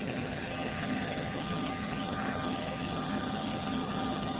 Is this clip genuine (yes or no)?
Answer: no